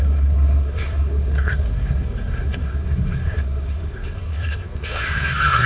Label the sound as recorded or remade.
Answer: remade